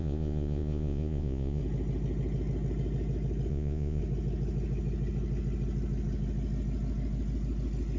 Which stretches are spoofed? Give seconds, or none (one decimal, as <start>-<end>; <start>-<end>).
0.0-1.6; 3.5-4.0